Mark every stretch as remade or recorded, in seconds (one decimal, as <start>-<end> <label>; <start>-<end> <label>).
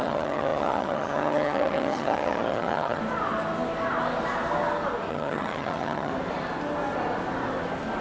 0.0-3.0 remade; 3.0-5.1 recorded; 5.1-6.1 remade; 6.1-8.0 recorded